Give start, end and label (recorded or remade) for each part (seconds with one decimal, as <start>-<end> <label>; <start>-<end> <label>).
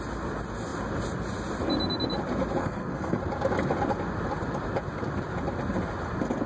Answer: 0.0-2.6 recorded; 2.6-3.2 remade; 3.2-6.5 recorded